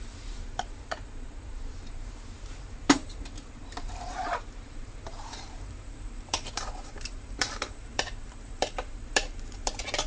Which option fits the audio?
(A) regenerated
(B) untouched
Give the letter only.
A